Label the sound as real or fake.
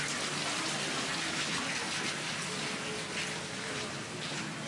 real